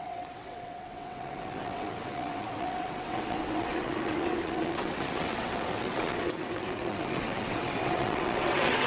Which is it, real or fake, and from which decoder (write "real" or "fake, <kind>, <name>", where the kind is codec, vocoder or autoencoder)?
fake, vocoder, WaveNeXt